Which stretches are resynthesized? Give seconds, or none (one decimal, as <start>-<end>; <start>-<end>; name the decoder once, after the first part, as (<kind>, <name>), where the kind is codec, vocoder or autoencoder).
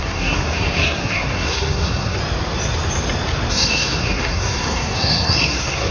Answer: 0.0-2.2 (codec, SNAC); 3.5-5.9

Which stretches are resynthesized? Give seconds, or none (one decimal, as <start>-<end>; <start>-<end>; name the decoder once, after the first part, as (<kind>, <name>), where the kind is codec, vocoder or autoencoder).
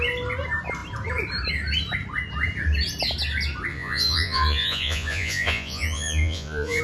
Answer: 3.7-6.8 (vocoder, Vocos)